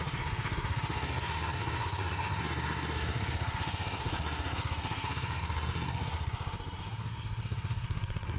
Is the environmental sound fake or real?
fake